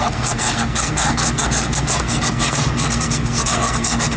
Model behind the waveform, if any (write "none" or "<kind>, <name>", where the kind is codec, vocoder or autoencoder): codec, SNAC